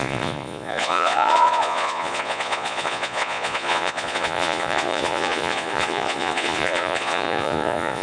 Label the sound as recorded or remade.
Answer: remade